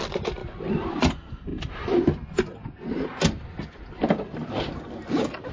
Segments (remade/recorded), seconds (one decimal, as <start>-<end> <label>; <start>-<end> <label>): 0.0-5.5 recorded